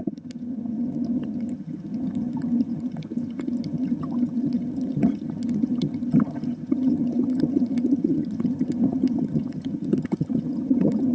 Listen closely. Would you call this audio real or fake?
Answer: fake